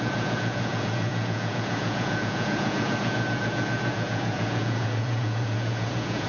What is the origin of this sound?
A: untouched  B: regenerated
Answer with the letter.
B